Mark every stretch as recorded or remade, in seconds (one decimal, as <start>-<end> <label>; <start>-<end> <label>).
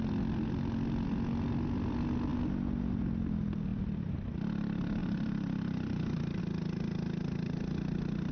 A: 0.0-3.7 recorded; 3.7-4.4 remade; 4.4-5.0 recorded; 5.0-6.4 remade; 6.4-8.3 recorded